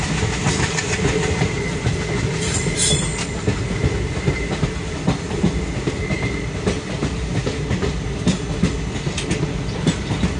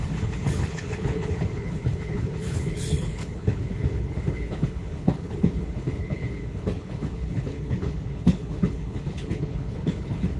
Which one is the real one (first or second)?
first